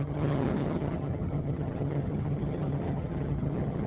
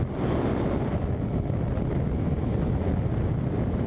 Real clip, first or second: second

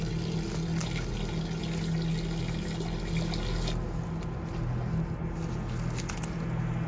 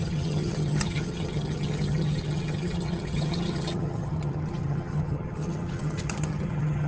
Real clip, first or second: first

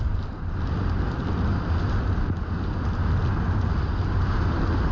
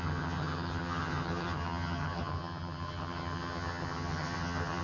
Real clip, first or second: first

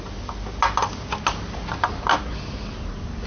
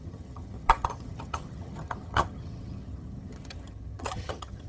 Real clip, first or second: first